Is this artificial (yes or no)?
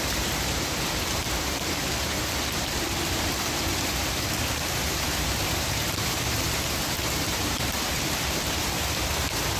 yes